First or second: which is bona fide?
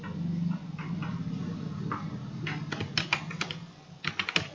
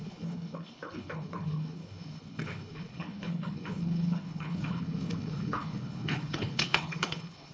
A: first